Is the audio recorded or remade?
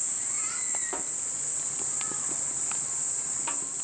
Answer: recorded